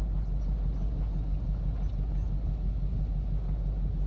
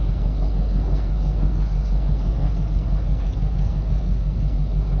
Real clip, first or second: first